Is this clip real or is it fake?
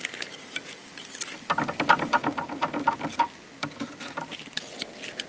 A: real